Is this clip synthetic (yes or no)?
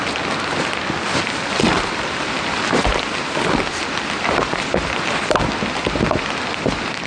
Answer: no